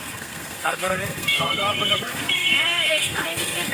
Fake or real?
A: fake